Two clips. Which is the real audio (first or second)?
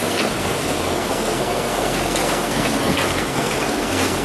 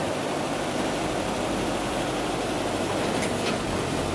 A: second